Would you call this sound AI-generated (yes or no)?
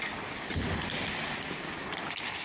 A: no